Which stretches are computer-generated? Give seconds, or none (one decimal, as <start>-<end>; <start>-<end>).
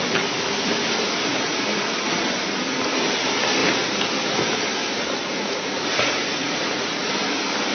1.3-2.2; 5.2-7.1